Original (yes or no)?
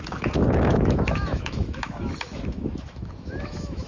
no